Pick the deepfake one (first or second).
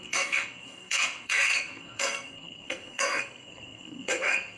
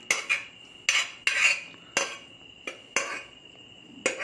first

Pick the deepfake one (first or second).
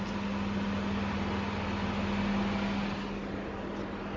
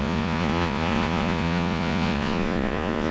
second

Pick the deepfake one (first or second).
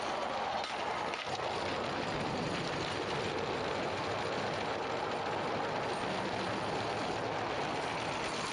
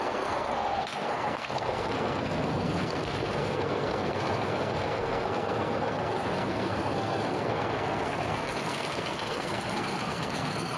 second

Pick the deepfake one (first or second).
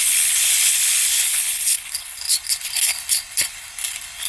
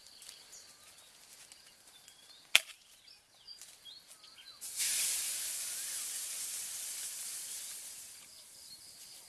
first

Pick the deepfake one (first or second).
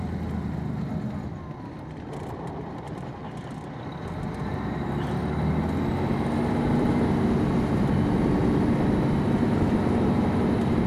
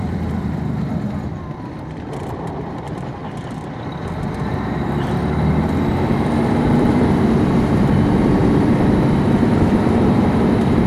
second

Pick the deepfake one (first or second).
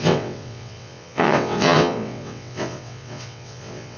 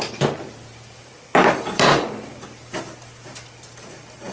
first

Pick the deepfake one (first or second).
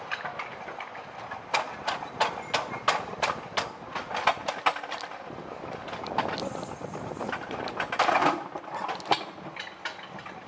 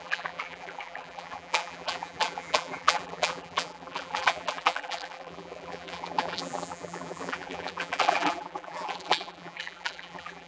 second